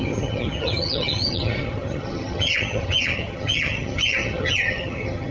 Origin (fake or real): fake